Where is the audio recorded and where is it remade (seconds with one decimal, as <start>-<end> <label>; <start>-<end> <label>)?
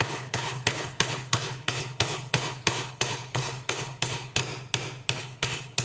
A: 0.0-4.4 remade; 4.4-5.2 recorded; 5.2-5.8 remade